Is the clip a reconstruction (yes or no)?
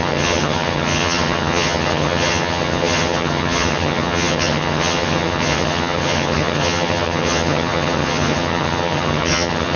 yes